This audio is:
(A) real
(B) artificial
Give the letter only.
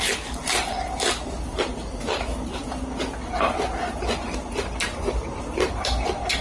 A